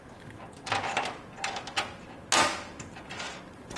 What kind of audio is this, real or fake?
real